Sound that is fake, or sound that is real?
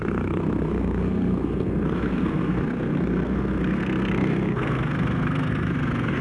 fake